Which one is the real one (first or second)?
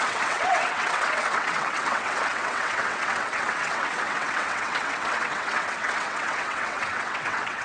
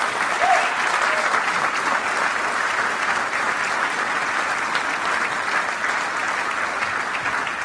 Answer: second